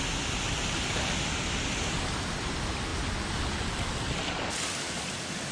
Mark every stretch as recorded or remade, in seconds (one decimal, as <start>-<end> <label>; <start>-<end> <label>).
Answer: 0.0-5.5 recorded